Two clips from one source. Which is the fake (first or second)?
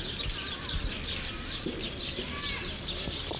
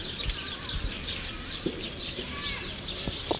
second